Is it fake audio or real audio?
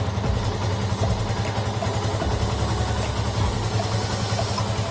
real